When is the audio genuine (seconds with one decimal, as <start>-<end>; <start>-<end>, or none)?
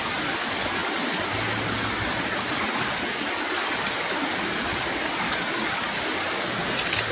0.0-7.1